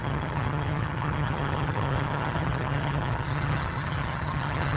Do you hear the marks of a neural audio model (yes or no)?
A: yes